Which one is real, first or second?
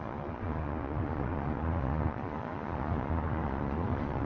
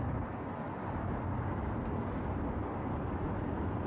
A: second